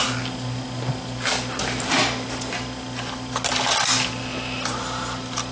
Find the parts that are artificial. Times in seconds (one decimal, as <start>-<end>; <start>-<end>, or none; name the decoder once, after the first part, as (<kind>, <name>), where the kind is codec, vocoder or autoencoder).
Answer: none